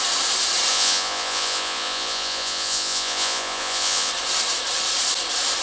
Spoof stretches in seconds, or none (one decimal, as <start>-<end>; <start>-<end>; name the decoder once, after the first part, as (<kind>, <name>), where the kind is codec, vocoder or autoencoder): 0.7-4.1 (vocoder, Vocos)